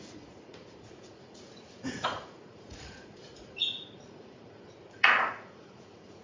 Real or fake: fake